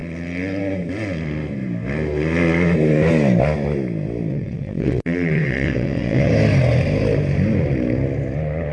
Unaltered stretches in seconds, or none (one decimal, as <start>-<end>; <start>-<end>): 0.0-4.3; 6.3-8.7